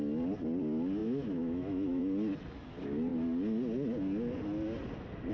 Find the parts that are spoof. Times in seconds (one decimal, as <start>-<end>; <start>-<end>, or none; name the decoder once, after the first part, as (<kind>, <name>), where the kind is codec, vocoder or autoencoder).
1.0-2.0 (autoencoder, DAC-VAE)